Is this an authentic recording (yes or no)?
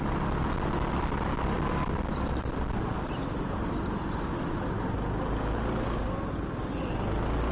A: yes